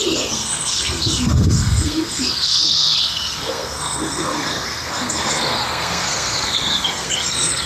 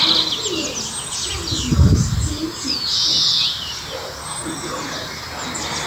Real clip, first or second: second